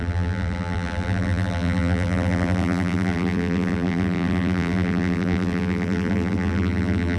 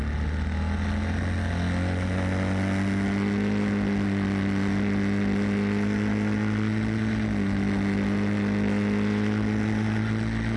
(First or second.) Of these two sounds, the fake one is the first